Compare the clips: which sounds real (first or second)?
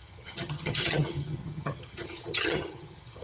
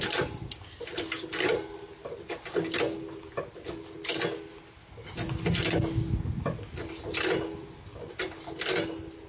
second